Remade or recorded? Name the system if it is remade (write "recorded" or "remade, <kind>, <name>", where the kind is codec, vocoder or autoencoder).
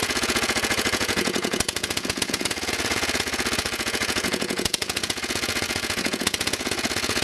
remade, vocoder, Vocos